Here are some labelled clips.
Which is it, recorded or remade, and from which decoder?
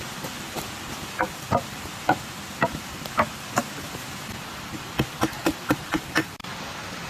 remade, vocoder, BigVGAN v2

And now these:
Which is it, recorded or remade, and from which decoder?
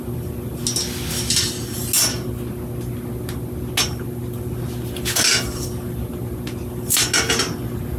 recorded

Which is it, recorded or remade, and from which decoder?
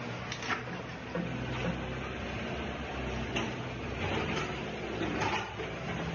recorded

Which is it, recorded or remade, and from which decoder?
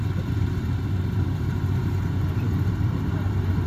remade, vocoder, BigVGAN v2